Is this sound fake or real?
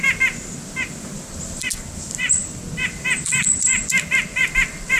fake